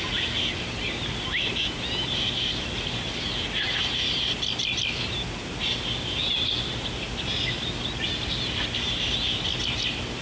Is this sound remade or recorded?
recorded